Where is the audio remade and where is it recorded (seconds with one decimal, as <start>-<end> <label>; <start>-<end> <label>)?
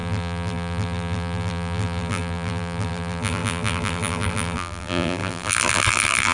0.0-6.3 remade